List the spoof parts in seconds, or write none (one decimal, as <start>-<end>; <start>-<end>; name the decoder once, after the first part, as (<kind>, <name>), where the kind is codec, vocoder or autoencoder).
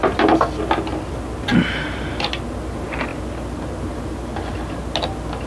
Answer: 1.5-2.1 (vocoder, BigVGAN v2)